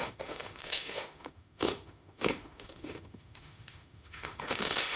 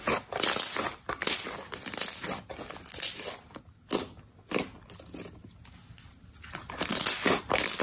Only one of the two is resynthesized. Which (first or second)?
first